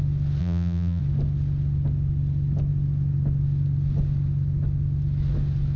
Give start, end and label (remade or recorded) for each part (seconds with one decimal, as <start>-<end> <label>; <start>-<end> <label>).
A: 0.0-0.4 recorded; 0.4-1.0 remade; 1.0-5.8 recorded